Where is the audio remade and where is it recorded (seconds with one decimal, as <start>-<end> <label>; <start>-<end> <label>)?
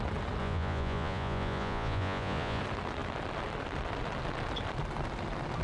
0.0-0.4 recorded; 0.4-2.6 remade; 2.6-5.6 recorded